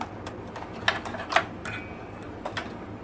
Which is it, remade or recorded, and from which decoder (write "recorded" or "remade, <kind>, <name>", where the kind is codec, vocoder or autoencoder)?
recorded